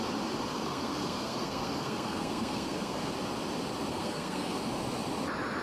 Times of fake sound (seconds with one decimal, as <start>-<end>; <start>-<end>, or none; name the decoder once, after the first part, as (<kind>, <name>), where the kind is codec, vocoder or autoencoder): 0.5-3.1 (codec, SNAC); 3.9-4.6